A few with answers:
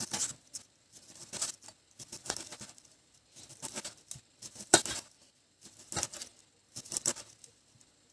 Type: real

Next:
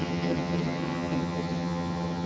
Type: fake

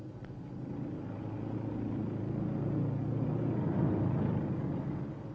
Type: real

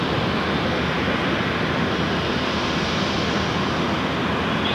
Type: real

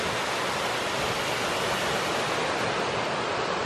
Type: real